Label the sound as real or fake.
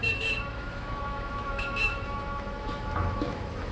fake